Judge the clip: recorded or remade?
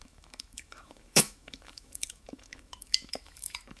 remade